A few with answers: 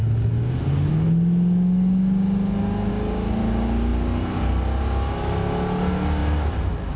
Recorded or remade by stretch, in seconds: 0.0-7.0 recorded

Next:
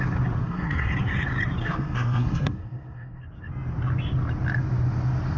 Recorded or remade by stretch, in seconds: 0.0-0.4 recorded; 0.4-0.9 remade; 0.9-1.6 recorded; 1.6-3.2 remade; 3.2-5.4 recorded

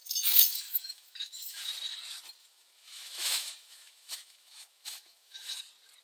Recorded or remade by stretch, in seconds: 0.0-1.7 remade; 1.7-2.4 recorded; 2.4-5.6 remade; 5.6-6.0 recorded

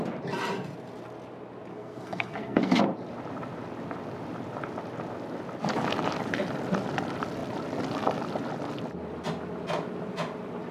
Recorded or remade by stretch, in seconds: 0.0-1.7 recorded; 1.7-2.8 remade; 2.8-10.7 recorded

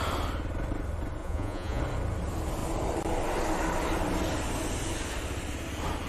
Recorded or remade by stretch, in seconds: 0.0-1.2 recorded; 1.2-1.8 remade; 1.8-6.1 recorded

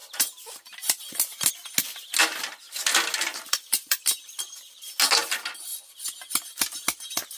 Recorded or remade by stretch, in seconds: 0.0-3.3 recorded; 3.3-4.0 remade; 4.0-7.4 recorded